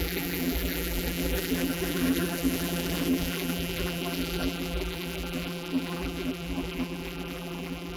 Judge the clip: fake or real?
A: fake